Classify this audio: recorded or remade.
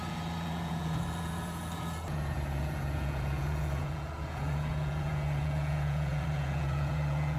remade